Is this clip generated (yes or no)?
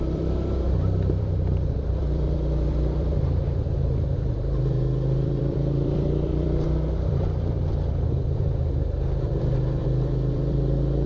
yes